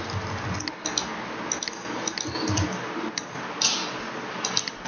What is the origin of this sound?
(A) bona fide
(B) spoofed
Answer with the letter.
A